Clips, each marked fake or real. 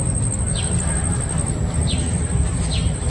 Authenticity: real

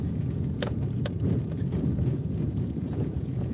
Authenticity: fake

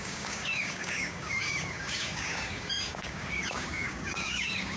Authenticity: fake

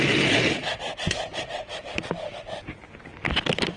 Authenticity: real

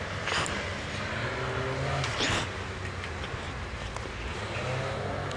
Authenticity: real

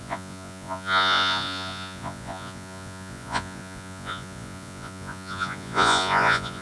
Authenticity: fake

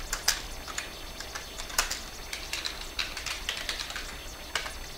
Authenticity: real